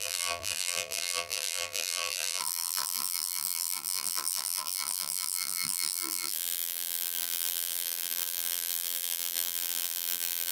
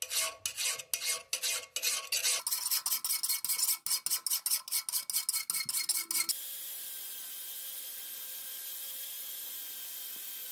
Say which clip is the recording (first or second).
second